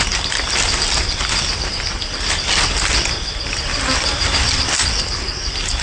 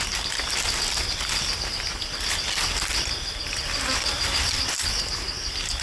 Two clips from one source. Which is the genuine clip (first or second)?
second